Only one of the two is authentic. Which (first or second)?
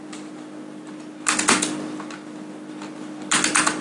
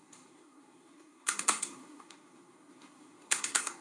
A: first